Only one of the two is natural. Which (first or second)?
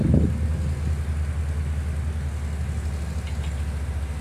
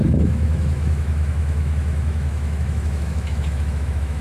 first